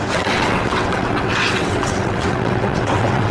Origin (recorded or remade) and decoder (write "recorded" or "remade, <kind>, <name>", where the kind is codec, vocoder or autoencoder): remade, vocoder, WaveNeXt